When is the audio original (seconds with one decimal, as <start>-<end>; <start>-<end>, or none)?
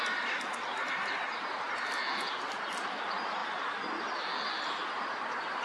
0.0-5.6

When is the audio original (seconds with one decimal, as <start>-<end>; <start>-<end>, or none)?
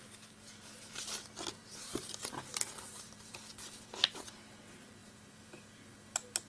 0.0-1.6; 3.4-5.0